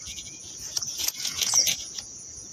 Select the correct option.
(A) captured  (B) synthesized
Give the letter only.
B